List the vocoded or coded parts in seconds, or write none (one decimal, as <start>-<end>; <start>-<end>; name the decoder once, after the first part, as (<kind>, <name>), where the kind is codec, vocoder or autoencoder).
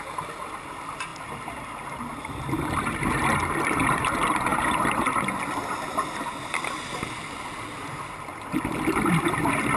none